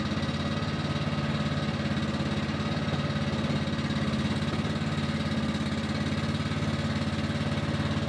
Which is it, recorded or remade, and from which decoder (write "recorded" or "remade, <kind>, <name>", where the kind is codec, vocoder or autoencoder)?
recorded